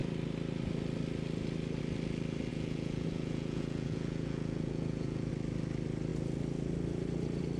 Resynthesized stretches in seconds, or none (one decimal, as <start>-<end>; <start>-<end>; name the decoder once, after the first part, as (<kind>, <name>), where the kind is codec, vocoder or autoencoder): 2.5-5.3 (vocoder, Vocos)